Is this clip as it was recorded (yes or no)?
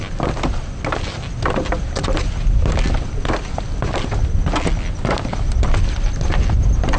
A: yes